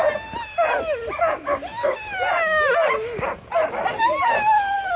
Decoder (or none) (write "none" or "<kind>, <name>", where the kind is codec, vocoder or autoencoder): none